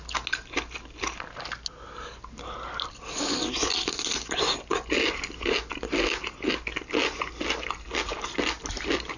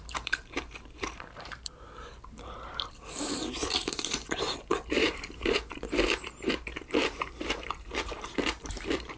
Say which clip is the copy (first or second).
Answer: second